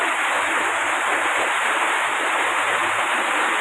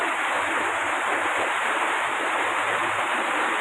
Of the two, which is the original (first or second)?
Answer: first